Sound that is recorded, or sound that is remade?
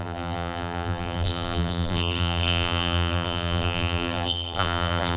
remade